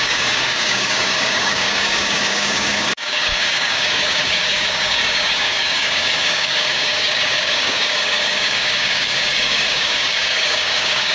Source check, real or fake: fake